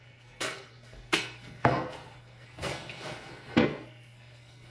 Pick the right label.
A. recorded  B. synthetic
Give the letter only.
B